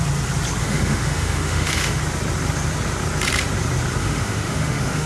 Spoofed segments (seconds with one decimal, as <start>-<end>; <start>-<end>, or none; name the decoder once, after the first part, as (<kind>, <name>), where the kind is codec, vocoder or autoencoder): 0.6-2.0 (autoencoder, DAC-VAE); 4.0-5.1